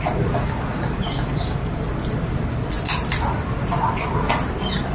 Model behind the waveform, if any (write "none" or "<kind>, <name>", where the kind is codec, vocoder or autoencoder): none